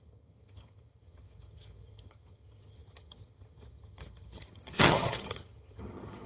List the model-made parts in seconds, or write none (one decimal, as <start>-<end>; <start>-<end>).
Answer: 0.0-6.3